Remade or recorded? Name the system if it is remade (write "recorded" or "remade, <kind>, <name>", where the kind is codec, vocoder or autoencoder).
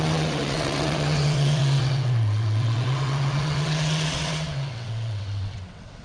remade, vocoder, WaveNeXt